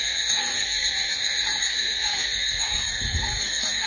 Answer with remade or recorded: remade